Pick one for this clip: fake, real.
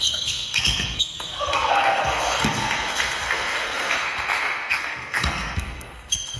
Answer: fake